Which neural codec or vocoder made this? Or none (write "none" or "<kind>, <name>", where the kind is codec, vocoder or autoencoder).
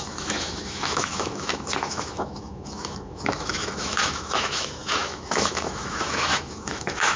autoencoder, DAC-VAE